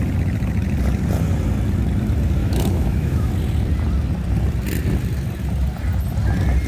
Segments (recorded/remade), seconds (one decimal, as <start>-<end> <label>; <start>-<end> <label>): 0.0-2.4 recorded; 2.4-3.3 remade; 3.3-6.7 recorded

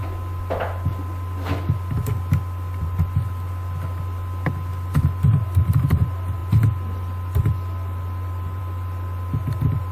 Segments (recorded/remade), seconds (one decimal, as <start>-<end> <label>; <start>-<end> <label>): 0.0-9.9 recorded

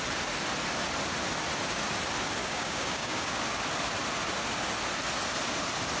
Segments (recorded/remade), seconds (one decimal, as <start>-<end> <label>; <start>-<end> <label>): 0.0-2.4 recorded; 2.4-3.4 remade; 3.4-6.0 recorded

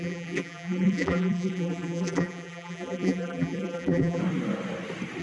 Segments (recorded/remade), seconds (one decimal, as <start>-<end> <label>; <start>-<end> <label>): 0.0-4.2 remade; 4.2-5.2 recorded

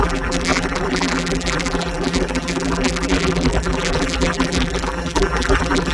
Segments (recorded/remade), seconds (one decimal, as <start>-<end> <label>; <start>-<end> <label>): 0.0-5.9 remade

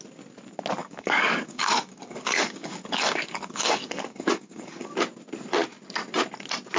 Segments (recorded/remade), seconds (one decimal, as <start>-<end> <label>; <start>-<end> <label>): 0.0-0.8 recorded; 0.8-4.9 remade; 4.9-6.8 recorded